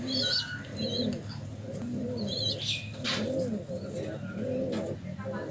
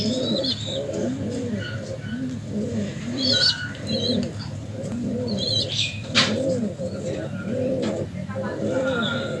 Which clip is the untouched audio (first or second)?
first